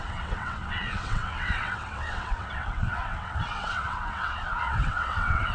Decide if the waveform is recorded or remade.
remade